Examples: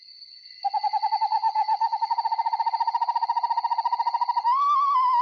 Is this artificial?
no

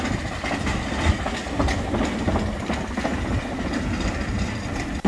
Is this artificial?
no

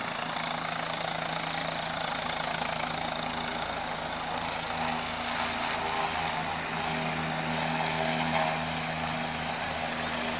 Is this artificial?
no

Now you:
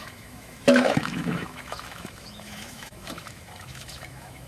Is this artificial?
yes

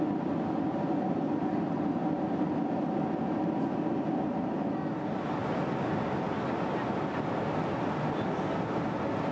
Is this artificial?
no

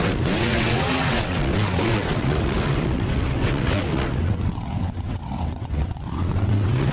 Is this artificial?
yes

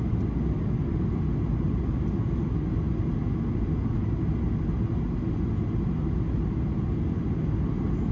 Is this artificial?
no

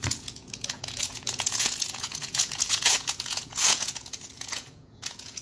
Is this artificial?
yes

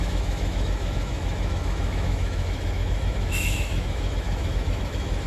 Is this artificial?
yes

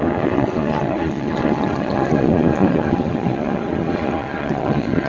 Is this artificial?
yes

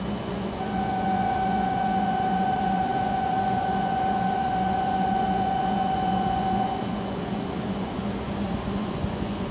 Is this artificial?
yes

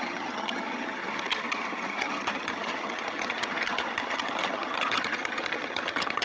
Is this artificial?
yes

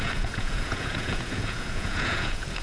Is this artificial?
yes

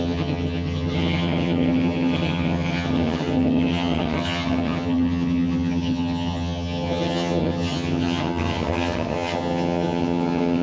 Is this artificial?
yes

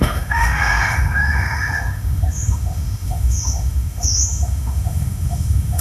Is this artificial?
yes